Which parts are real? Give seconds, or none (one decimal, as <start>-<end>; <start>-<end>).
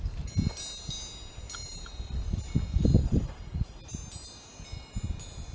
0.0-3.0; 3.8-5.5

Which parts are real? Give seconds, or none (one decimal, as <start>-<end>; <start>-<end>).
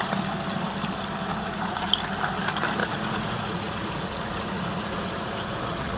0.0-1.3; 1.9-2.8